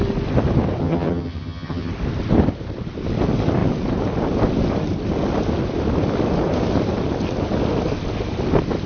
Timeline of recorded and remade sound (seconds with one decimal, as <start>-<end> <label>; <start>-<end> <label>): 0.0-0.8 recorded; 0.8-1.9 remade; 1.9-8.9 recorded